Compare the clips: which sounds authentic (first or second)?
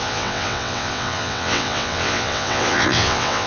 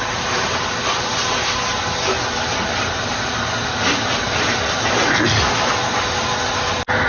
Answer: second